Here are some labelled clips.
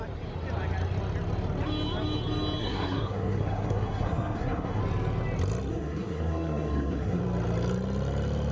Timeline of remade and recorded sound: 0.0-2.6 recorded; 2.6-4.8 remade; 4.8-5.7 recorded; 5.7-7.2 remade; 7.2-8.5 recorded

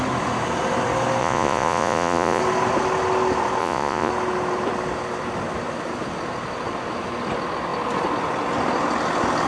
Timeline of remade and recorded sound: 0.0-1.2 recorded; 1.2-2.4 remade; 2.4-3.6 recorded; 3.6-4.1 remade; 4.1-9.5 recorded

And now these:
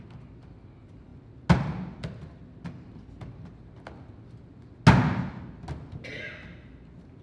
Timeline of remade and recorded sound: 0.0-7.2 recorded

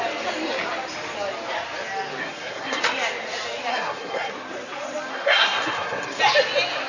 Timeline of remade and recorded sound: 0.0-2.2 recorded; 2.2-2.8 remade; 2.8-3.7 recorded; 3.7-4.3 remade; 4.3-5.1 recorded; 5.1-6.2 remade; 6.2-6.9 recorded

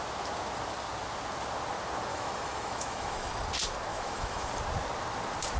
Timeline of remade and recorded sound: 0.0-2.1 recorded; 2.1-3.3 remade; 3.3-3.9 recorded; 3.9-4.5 remade; 4.5-5.6 recorded

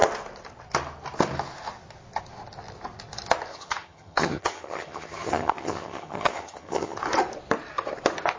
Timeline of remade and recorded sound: 0.0-3.5 recorded; 3.5-7.0 remade; 7.0-8.4 recorded

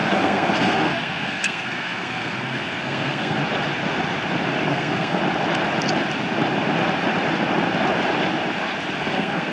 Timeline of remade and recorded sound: 0.0-3.4 remade; 3.4-4.7 recorded; 4.7-5.2 remade; 5.2-9.0 recorded; 9.0-9.5 remade

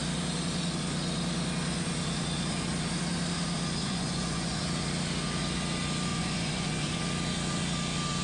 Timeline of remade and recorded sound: 0.0-3.8 recorded; 3.8-4.6 remade; 4.6-6.1 recorded; 6.1-7.0 remade; 7.0-8.2 recorded